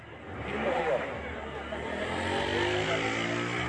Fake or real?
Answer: real